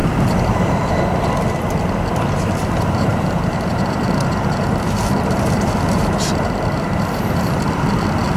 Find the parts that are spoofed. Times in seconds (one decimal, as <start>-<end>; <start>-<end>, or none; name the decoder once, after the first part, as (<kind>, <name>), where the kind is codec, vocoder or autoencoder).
0.0-0.9 (vocoder, BigVGAN v2); 2.6-7.6